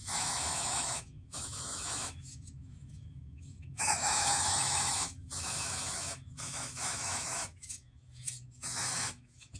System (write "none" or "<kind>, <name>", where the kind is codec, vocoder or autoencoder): autoencoder, DAC-VAE